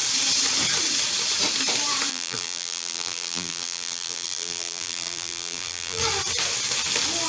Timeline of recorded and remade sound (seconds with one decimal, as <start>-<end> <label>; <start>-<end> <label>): 0.0-2.1 recorded; 2.1-6.0 remade; 6.0-7.3 recorded